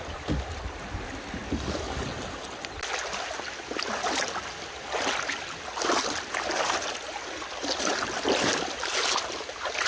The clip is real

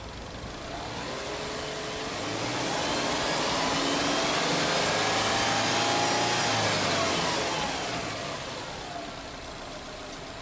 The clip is real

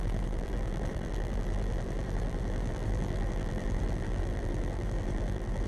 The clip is fake